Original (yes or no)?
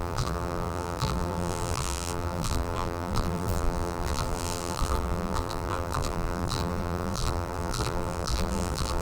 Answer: no